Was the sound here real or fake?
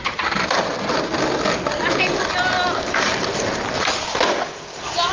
real